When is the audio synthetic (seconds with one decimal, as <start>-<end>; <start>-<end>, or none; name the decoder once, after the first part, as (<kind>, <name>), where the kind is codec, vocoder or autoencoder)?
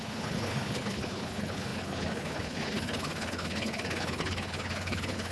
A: 0.0-5.3 (codec, HILCodec)